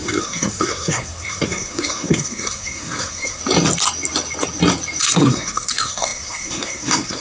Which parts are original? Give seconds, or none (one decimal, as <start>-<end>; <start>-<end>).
3.4-5.0